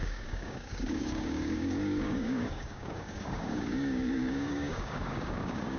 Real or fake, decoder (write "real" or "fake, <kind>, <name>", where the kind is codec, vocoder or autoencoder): fake, codec, DAC